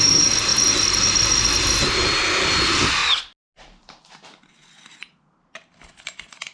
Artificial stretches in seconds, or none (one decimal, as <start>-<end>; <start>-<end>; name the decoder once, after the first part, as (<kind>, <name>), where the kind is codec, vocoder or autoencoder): none